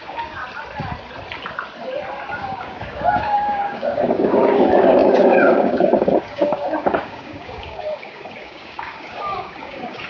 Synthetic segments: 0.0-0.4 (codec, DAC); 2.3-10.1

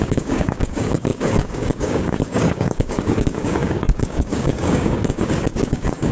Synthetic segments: 0.0-6.1 (codec, DAC)

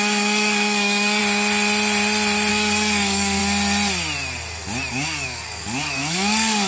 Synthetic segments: 0.0-1.2 (codec, DAC); 2.5-3.4; 4.9-6.7

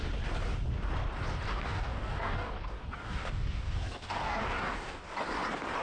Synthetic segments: 1.5-5.0 (codec, DAC)

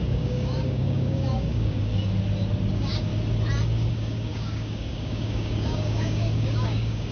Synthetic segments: 0.0-1.9 (codec, DAC); 2.7-3.1; 3.9-7.1

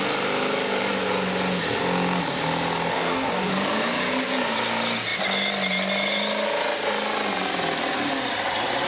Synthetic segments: 2.9-3.5 (codec, DAC)

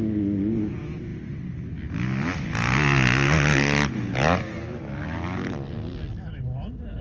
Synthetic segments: none

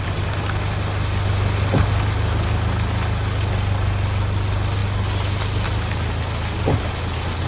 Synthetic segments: none